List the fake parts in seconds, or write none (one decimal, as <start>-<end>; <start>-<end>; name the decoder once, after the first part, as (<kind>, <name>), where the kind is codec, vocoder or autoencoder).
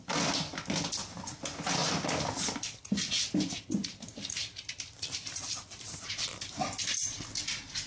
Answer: 3.8-6.3 (vocoder, BigVGAN v2)